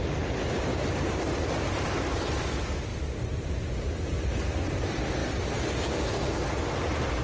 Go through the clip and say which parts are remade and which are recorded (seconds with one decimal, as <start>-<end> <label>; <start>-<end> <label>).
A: 0.0-0.7 recorded; 0.7-1.9 remade; 1.9-7.2 recorded